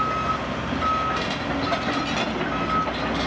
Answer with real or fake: real